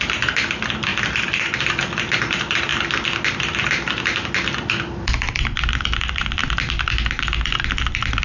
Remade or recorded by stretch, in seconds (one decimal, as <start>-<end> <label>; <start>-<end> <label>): 0.0-2.7 remade; 2.7-3.3 recorded; 3.3-6.4 remade; 6.4-7.7 recorded; 7.7-8.2 remade